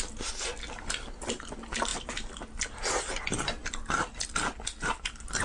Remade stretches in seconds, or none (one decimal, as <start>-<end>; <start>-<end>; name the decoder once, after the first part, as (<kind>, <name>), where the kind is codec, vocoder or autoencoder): 1.9-2.6 (vocoder, BigVGAN v2)